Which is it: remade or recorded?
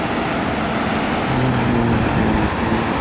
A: recorded